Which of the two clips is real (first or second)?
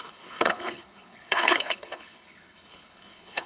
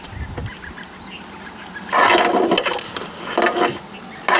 second